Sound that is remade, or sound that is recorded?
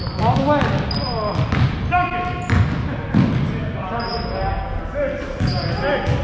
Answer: recorded